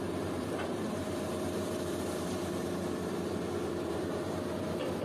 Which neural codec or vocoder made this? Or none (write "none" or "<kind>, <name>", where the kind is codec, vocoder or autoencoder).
vocoder, BigVGAN v2